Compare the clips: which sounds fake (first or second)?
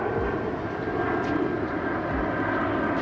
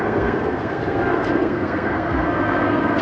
second